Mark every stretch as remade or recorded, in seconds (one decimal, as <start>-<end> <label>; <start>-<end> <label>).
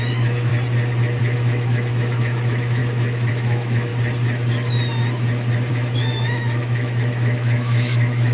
0.0-0.5 remade; 0.5-1.2 recorded; 1.2-2.8 remade; 2.8-3.3 recorded; 3.3-3.9 remade; 3.9-5.7 recorded; 5.7-8.3 remade